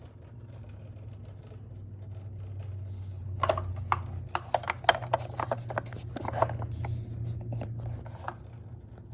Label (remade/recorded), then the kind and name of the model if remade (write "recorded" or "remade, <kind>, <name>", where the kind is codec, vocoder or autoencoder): recorded